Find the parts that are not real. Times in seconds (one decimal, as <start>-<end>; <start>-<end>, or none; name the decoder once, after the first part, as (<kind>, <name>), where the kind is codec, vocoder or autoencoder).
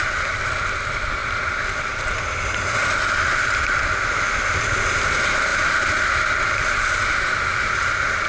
none